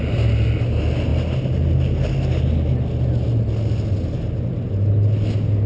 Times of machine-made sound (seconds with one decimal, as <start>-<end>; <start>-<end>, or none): none